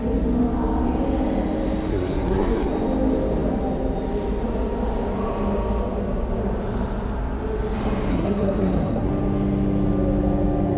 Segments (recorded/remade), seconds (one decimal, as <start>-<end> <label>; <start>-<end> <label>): 0.0-1.9 recorded; 1.9-2.7 remade; 2.7-8.1 recorded; 8.1-9.1 remade; 9.1-10.8 recorded